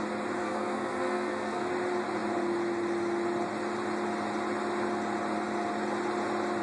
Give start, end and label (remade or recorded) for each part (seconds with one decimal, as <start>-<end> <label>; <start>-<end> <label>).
0.0-0.4 recorded; 0.4-1.7 remade; 1.7-6.6 recorded